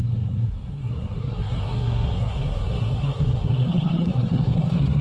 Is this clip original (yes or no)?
no